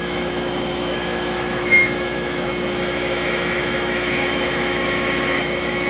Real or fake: fake